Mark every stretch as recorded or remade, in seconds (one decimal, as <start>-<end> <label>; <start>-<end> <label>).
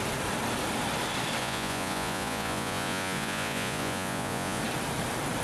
0.0-1.4 recorded; 1.4-4.6 remade; 4.6-5.4 recorded